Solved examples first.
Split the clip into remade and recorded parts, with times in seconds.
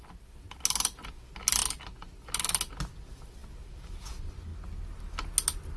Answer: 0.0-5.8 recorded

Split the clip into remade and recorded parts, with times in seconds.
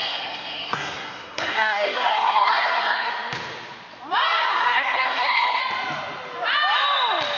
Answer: 0.0-3.1 remade; 3.1-4.5 recorded; 4.5-5.6 remade; 5.6-7.4 recorded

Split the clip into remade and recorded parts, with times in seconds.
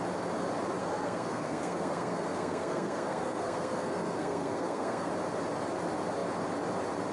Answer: 0.0-0.8 recorded; 0.8-5.1 remade; 5.1-7.1 recorded